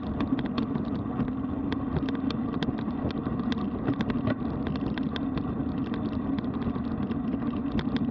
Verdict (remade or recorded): recorded